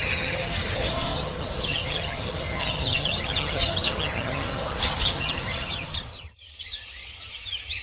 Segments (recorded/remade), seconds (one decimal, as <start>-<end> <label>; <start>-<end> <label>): 0.0-7.8 remade